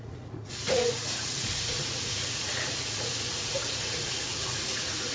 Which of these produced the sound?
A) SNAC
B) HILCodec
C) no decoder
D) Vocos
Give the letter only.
D